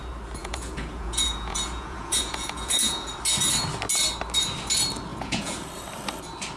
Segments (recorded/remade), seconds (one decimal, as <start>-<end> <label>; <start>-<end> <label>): 0.0-0.4 recorded; 0.4-3.1 remade; 3.1-5.1 recorded; 5.1-5.7 remade; 5.7-6.6 recorded